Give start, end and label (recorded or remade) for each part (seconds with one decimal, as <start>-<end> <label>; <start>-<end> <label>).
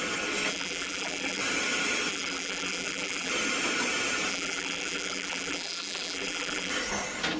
0.0-0.5 recorded; 0.5-1.4 remade; 1.4-2.1 recorded; 2.1-3.3 remade; 3.3-4.3 recorded; 4.3-6.7 remade; 6.7-7.4 recorded